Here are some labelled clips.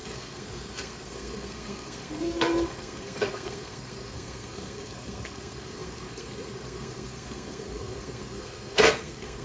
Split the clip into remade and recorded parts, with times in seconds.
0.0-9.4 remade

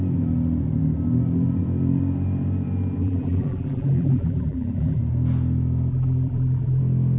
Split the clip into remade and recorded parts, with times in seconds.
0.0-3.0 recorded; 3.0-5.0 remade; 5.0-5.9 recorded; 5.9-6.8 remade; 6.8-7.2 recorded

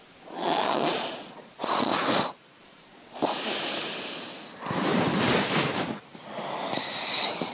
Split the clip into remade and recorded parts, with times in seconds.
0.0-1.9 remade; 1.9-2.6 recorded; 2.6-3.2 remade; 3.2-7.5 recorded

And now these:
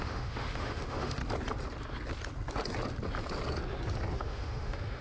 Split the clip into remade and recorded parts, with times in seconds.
0.0-1.2 remade; 1.2-4.2 recorded; 4.2-5.0 remade